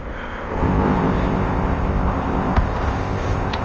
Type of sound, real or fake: fake